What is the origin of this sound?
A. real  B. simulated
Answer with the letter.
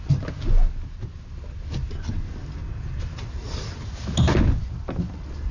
A